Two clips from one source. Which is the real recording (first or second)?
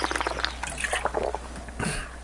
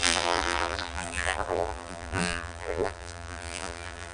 first